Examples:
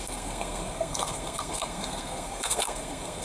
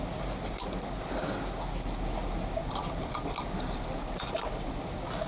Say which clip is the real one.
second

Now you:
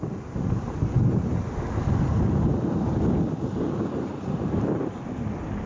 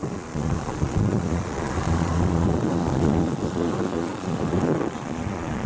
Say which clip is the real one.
first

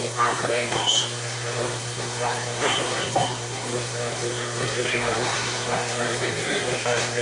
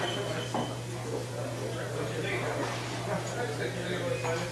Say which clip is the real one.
second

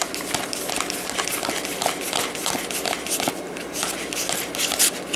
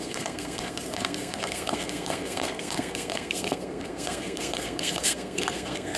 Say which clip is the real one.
first